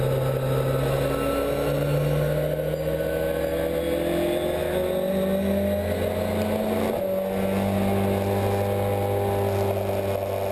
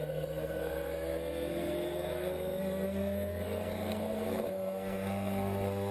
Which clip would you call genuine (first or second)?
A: first